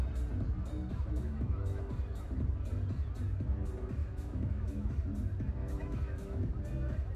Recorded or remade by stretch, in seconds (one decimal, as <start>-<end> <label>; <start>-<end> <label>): 0.0-0.9 recorded; 0.9-1.9 remade; 1.9-4.0 recorded; 4.0-4.9 remade; 4.9-5.6 recorded; 5.6-6.5 remade; 6.5-7.2 recorded